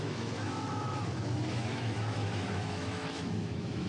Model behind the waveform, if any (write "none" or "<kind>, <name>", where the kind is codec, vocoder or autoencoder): autoencoder, DAC-VAE